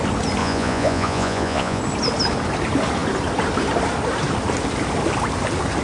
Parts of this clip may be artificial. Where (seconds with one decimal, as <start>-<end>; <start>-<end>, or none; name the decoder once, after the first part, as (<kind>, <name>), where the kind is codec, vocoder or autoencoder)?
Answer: 0.4-1.8 (vocoder, Vocos)